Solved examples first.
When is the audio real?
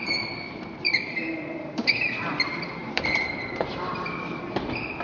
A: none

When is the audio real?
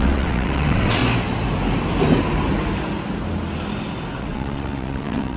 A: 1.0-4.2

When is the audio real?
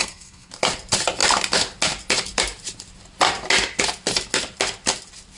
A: 0.5-5.4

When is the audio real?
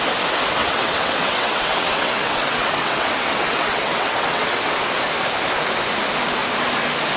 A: 0.0-0.6; 4.8-7.2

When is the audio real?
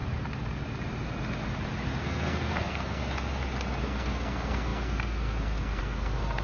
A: 0.0-2.0; 3.0-3.8